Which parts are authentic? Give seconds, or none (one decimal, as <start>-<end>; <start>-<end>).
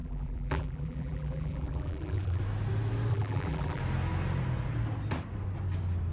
2.4-3.1; 3.8-6.1